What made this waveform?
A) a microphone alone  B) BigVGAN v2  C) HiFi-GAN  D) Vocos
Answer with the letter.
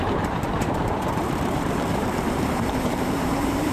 B